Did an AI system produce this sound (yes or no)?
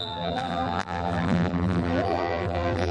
yes